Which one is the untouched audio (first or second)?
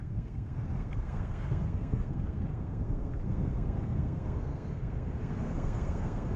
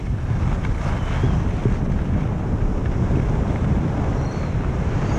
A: second